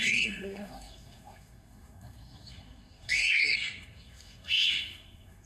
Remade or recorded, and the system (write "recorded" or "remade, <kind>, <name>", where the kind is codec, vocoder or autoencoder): remade, codec, SNAC